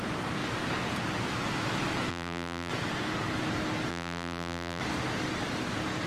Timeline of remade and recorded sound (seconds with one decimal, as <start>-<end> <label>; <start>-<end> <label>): 0.0-2.1 recorded; 2.1-2.7 remade; 2.7-3.9 recorded; 3.9-4.8 remade; 4.8-6.1 recorded